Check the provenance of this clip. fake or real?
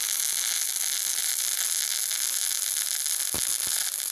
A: real